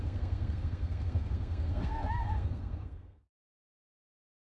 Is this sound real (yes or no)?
no